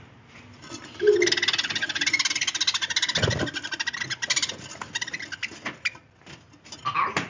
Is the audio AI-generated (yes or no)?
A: no